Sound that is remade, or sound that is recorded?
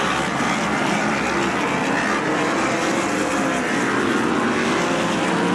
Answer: recorded